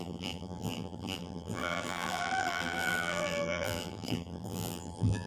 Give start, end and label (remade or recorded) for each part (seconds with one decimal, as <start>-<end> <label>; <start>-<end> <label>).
0.0-5.3 remade